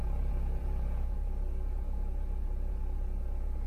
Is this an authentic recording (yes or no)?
no